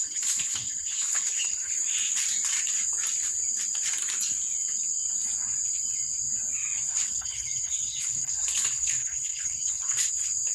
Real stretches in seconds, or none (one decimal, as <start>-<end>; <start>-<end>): 1.7-6.9; 10.1-10.5